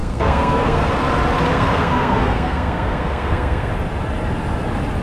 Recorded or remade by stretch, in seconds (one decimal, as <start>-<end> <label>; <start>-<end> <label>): 0.0-0.9 remade; 0.9-1.5 recorded; 1.5-3.7 remade; 3.7-5.0 recorded